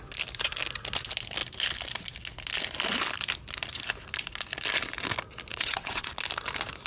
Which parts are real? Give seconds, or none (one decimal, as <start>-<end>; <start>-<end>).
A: 0.0-5.5; 6.1-6.9